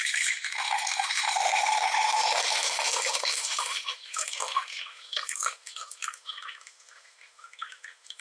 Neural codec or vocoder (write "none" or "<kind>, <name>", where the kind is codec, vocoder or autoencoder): autoencoder, DAC-VAE